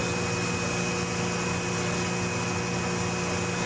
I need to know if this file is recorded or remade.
recorded